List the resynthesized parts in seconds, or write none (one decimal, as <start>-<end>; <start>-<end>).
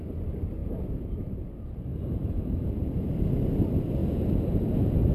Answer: 0.6-1.4; 1.9-3.1; 4.0-5.1